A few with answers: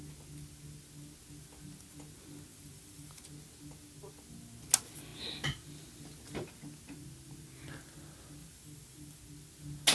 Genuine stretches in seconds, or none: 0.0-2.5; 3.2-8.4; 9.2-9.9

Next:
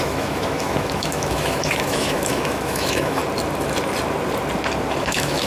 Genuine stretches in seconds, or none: 3.2-5.0

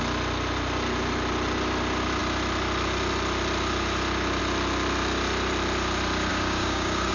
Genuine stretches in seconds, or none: 0.0-6.3

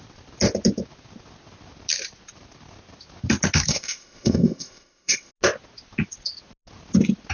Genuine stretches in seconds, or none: 0.0-3.7; 5.3-7.3

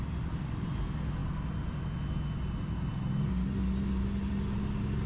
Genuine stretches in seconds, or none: 0.0-5.1

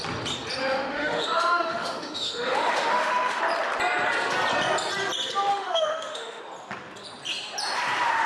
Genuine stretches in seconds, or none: 0.0-0.6; 3.4-5.5; 6.4-8.3

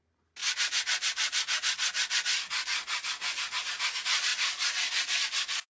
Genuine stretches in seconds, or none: 0.0-5.7